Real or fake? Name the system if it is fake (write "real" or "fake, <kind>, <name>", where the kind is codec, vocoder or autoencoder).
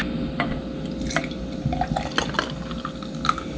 real